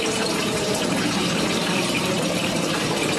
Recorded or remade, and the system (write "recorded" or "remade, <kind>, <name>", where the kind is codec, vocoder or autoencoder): remade, vocoder, BigVGAN v2